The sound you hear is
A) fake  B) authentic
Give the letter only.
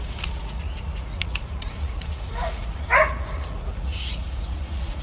A